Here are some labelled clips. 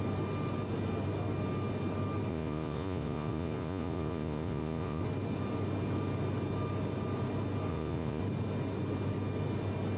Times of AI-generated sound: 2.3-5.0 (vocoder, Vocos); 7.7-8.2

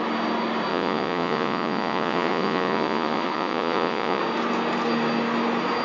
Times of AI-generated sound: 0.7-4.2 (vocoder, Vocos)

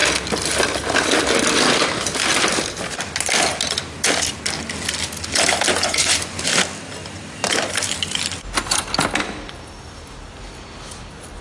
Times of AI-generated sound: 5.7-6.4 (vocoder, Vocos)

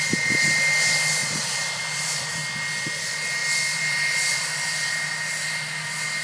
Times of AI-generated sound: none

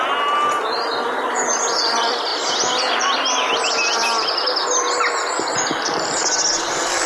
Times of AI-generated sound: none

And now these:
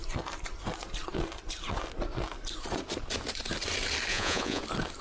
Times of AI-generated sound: 4.1-4.6 (vocoder, Vocos)